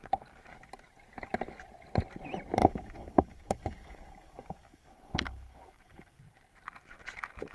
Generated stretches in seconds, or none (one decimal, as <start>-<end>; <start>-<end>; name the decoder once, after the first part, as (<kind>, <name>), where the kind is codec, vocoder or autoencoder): 2.6-6.2 (codec, DAC)